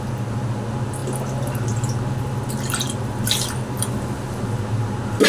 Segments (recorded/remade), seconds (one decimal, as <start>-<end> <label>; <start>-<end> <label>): 0.0-5.3 recorded

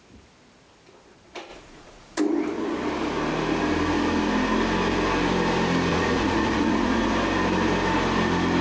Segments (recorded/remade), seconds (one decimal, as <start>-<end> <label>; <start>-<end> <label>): 0.0-1.5 recorded; 1.5-2.2 remade; 2.2-5.9 recorded; 5.9-7.1 remade; 7.1-8.6 recorded

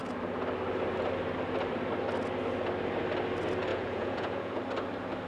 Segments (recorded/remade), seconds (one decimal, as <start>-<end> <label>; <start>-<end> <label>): 0.0-3.7 recorded; 3.7-4.6 remade; 4.6-5.3 recorded

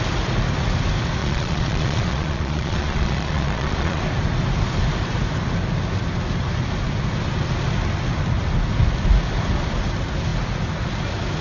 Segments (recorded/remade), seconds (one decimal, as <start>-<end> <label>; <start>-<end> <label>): 0.0-1.2 recorded; 1.2-4.0 remade; 4.0-11.4 recorded